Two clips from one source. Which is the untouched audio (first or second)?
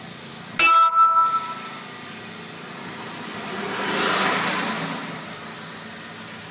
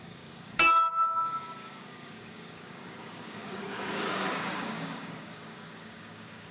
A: first